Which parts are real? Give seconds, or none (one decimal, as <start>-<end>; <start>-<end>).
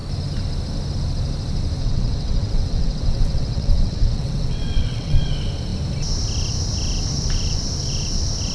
0.0-1.8; 5.3-8.5